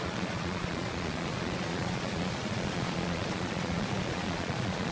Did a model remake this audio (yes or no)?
yes